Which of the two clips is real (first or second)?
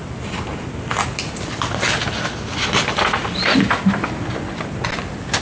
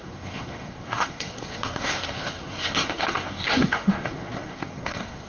first